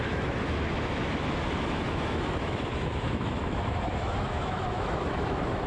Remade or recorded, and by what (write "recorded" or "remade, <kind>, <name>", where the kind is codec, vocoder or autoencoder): remade, autoencoder, DAC-VAE